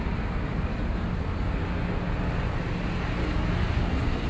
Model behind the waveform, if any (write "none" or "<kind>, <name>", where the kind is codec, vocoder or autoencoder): none